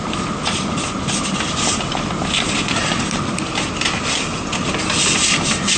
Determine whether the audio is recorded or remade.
recorded